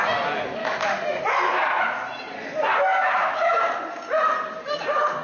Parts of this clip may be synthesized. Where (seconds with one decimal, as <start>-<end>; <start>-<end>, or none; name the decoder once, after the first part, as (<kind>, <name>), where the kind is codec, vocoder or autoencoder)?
0.6-1.8 (autoencoder, DAC-VAE); 2.9-3.6